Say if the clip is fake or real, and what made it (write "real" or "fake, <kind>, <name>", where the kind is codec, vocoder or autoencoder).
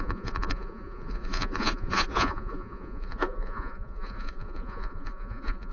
fake, vocoder, Vocos